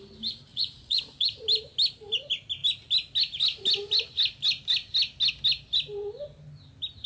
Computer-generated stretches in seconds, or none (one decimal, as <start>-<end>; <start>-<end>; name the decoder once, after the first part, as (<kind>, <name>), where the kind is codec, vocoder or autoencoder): 0.5-1.4 (vocoder, Vocos)